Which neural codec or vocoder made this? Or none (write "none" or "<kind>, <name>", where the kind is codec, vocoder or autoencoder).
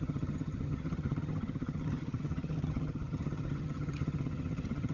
vocoder, HiFi-GAN